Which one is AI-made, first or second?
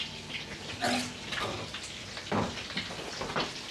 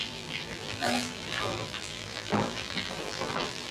second